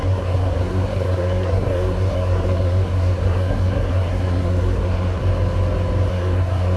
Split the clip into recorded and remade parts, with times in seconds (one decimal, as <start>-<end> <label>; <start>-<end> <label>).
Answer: 0.0-5.2 remade; 5.2-6.1 recorded; 6.1-6.8 remade